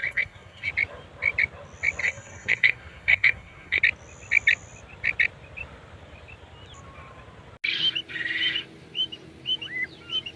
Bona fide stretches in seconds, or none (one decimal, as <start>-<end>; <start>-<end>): 0.7-2.0; 3.8-10.4